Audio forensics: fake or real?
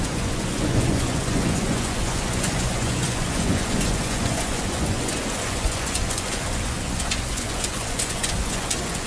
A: fake